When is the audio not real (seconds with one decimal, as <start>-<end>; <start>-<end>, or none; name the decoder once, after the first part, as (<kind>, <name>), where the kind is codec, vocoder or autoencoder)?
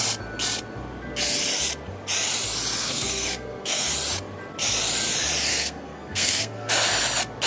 2.8-3.9 (codec, SNAC); 5.5-6.7